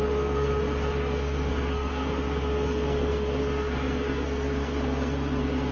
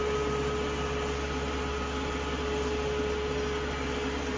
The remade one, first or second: first